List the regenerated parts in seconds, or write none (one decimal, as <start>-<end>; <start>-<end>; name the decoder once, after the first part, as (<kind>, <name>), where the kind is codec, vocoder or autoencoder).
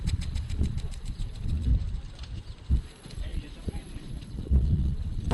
0.0-1.7 (vocoder, Vocos); 2.7-5.3